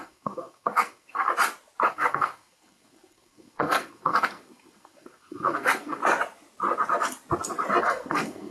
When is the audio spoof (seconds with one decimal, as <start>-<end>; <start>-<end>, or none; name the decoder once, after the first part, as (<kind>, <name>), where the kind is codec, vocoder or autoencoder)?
0.0-1.3 (codec, SNAC); 1.9-6.0; 7.8-8.5